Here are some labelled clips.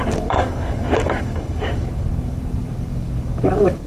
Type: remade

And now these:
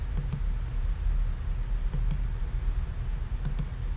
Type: recorded